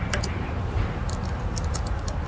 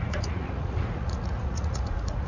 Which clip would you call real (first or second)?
first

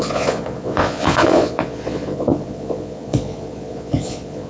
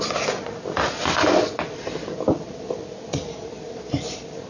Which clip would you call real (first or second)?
second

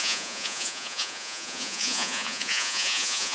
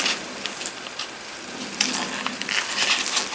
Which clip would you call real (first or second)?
second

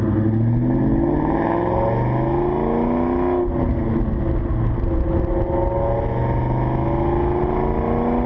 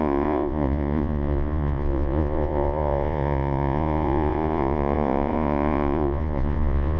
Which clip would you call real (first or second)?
first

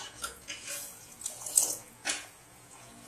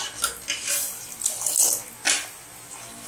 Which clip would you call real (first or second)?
second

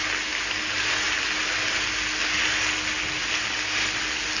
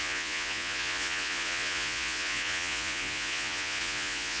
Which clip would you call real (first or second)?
first